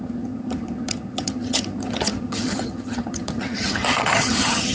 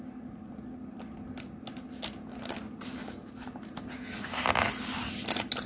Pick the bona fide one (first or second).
second